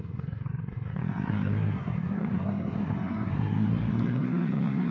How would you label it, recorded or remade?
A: remade